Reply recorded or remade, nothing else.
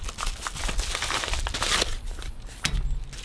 recorded